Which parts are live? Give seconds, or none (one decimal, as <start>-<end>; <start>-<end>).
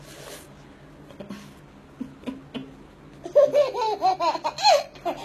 0.0-5.2